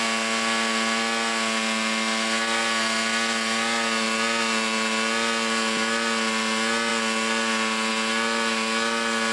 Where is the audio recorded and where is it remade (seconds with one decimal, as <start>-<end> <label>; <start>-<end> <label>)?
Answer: 0.0-9.3 recorded